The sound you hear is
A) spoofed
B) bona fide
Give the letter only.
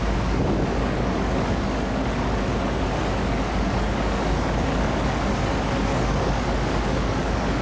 A